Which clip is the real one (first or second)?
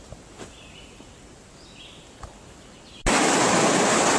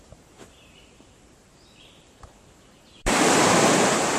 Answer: first